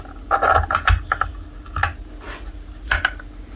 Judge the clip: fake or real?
real